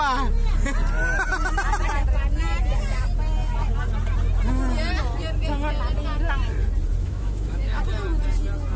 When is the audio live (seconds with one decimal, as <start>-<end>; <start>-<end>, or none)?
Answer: 0.0-7.0; 7.8-8.8